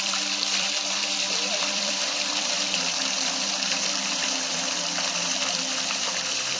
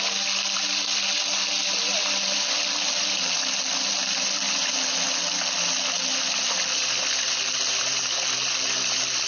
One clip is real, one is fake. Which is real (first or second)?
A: second